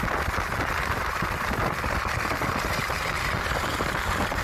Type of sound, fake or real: real